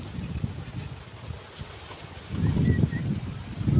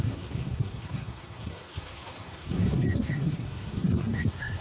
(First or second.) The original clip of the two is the first